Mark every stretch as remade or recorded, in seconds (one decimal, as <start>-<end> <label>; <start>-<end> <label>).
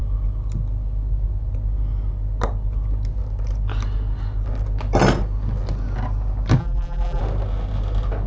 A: 0.0-6.6 recorded; 6.6-7.2 remade; 7.2-8.3 recorded